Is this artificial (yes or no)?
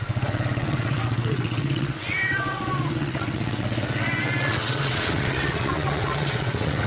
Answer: yes